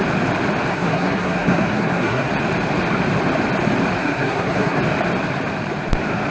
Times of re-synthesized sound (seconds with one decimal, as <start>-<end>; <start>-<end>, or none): 0.7-2.3; 4.0-4.8